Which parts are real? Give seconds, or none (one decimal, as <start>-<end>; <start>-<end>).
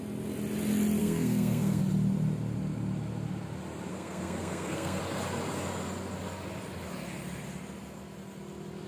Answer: 0.0-1.0; 1.8-3.9; 5.0-8.9